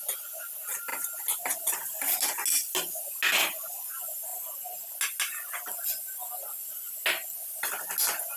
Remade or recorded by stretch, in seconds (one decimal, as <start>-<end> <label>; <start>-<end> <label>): 0.0-8.4 recorded